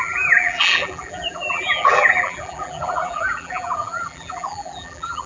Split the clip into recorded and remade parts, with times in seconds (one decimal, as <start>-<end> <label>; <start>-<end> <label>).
0.0-5.3 remade